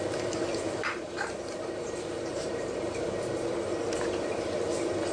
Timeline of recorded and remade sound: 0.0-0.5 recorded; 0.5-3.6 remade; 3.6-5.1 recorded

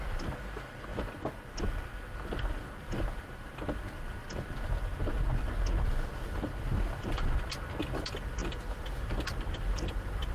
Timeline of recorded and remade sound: 0.0-8.4 recorded; 8.4-10.3 remade

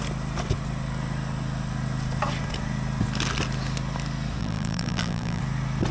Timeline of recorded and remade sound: 0.0-4.4 recorded; 4.4-5.4 remade; 5.4-5.9 recorded

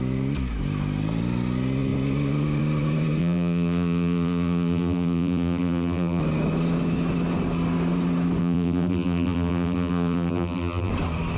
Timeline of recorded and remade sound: 0.0-3.2 recorded; 3.2-6.2 remade; 6.2-8.4 recorded; 8.4-10.9 remade; 10.9-11.4 recorded